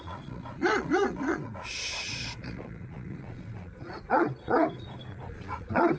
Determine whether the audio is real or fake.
fake